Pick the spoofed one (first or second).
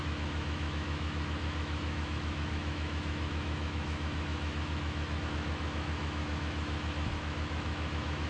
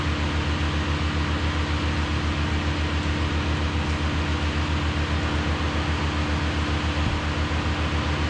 first